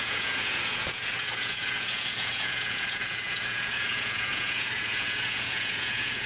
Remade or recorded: remade